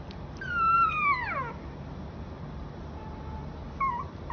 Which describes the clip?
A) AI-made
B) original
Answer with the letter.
B